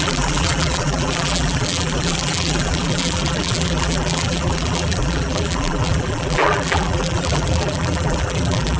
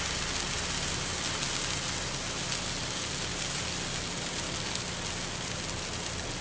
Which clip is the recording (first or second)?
second